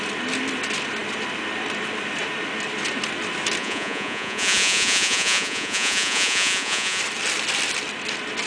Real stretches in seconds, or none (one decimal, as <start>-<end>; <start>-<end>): 0.0-3.6; 7.0-8.5